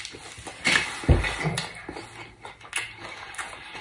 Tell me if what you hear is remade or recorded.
recorded